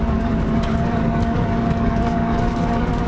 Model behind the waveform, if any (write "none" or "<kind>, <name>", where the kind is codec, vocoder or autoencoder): codec, DAC